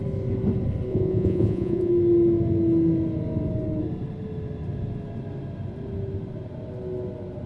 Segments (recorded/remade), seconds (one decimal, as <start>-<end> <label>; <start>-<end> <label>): 0.0-0.9 recorded; 0.9-1.9 remade; 1.9-7.5 recorded